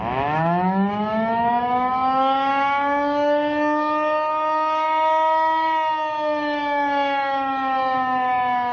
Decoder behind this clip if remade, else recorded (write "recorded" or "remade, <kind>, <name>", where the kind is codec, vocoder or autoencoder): remade, autoencoder, DAC-VAE